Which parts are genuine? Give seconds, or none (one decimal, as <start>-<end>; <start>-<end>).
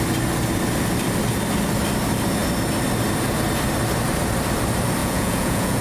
0.0-5.0